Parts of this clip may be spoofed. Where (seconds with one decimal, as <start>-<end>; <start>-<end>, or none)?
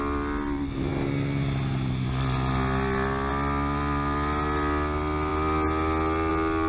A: none